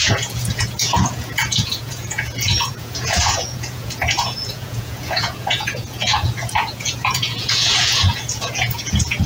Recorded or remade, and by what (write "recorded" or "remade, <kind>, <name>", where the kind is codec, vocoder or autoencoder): remade, vocoder, Vocos